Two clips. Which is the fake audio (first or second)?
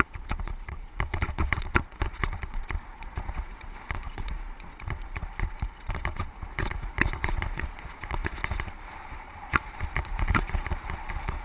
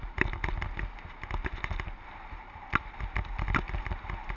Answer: first